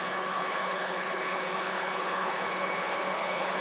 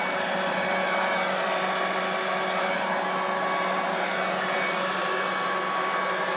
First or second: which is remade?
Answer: first